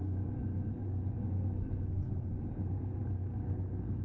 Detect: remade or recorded remade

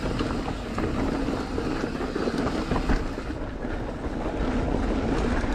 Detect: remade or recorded recorded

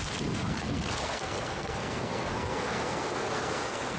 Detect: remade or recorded remade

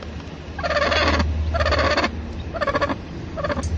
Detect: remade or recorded recorded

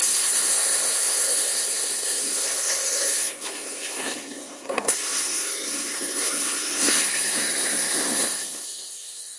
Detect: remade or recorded remade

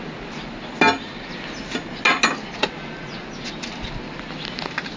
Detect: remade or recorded recorded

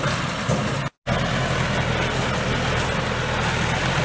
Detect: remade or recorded recorded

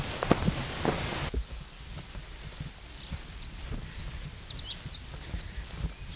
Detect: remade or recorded recorded